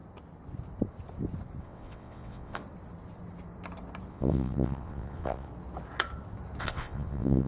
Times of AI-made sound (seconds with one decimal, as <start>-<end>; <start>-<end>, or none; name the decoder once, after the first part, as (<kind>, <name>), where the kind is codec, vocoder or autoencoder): 1.6-2.6 (vocoder, WaveNeXt); 4.1-5.5; 6.6-7.5